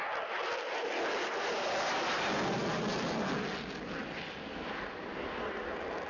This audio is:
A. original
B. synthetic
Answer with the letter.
A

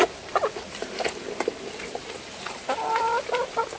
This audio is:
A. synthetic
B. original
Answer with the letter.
B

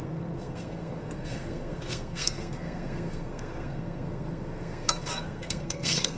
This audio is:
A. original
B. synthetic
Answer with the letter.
B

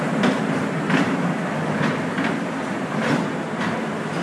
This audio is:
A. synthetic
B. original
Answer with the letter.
B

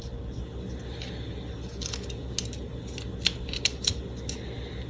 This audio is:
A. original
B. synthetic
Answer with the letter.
A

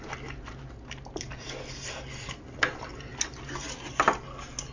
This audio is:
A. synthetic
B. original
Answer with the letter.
B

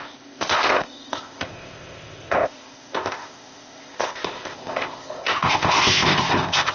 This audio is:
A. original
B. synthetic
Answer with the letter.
B